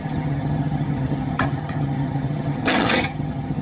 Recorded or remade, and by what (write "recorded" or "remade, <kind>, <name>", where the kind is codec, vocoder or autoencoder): remade, vocoder, HiFi-GAN